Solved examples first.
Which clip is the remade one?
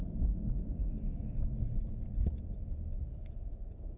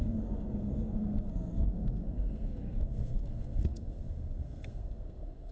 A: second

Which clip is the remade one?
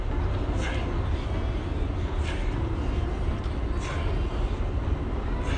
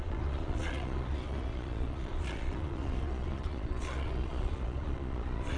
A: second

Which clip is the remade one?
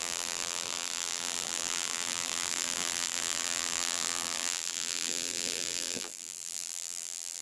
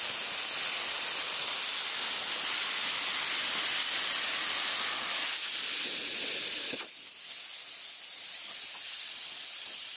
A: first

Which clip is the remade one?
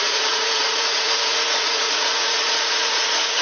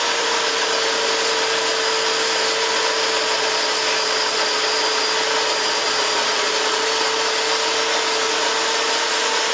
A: first